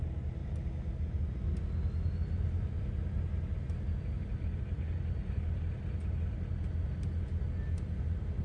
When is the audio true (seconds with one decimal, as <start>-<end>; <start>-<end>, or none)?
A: 0.0-8.4